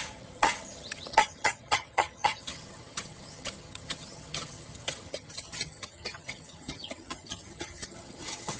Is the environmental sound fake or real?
fake